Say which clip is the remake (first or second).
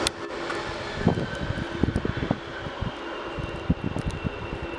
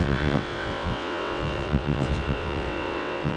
second